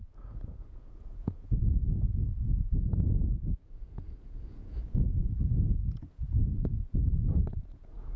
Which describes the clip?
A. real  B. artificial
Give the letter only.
B